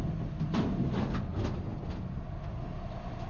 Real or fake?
real